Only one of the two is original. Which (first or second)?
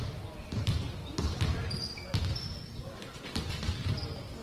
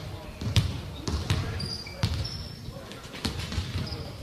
first